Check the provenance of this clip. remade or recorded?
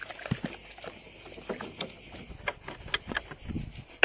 recorded